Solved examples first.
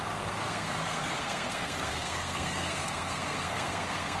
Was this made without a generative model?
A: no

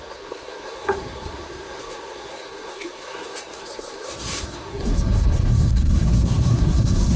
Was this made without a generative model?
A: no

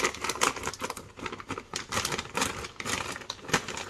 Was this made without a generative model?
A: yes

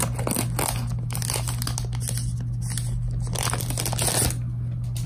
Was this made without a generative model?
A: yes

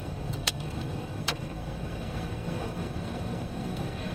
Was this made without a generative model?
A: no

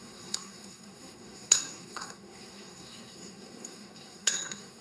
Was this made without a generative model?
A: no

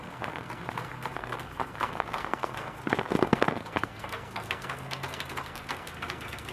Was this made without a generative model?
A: no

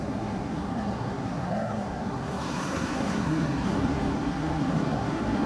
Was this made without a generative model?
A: no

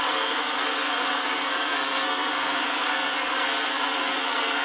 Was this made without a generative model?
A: no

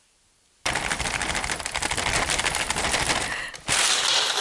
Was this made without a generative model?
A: yes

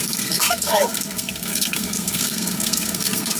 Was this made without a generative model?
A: no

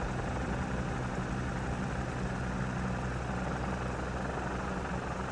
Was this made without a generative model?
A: yes